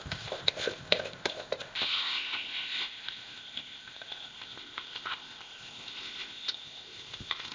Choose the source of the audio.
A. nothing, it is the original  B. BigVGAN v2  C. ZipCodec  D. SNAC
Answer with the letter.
C